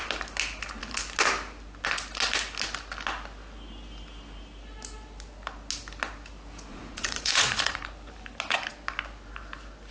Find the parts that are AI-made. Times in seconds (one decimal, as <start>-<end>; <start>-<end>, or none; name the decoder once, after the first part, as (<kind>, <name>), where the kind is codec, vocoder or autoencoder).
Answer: 6.7-7.8 (vocoder, Vocos)